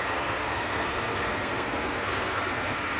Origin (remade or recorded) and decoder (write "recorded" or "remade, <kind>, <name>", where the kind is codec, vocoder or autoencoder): remade, codec, SNAC